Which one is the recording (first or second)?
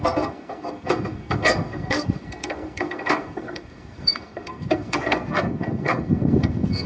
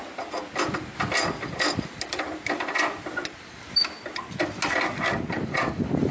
second